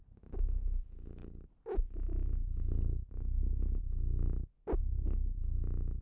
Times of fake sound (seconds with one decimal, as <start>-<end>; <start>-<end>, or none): none